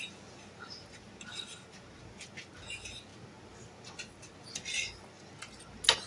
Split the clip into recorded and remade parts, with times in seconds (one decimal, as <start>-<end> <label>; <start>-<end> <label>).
0.0-0.9 recorded; 0.9-2.0 remade; 2.0-6.1 recorded